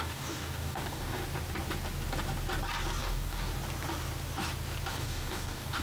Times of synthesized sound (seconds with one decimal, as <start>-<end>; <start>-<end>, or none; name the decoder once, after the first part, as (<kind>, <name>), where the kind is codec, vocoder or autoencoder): 0.0-1.2 (codec, DAC); 3.0-3.5; 4.9-5.8